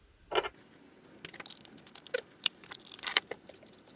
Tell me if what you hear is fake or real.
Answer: real